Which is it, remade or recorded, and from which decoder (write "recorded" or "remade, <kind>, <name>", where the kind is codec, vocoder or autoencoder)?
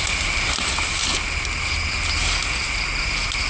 recorded